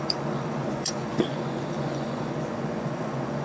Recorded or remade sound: remade